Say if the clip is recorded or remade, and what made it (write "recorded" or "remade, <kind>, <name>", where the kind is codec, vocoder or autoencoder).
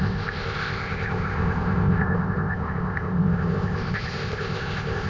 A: remade, codec, ZipCodec